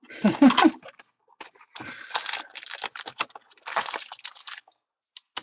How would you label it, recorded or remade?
recorded